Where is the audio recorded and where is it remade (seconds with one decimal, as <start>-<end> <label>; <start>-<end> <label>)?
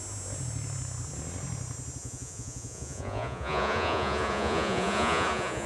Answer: 0.0-2.0 recorded; 2.0-5.7 remade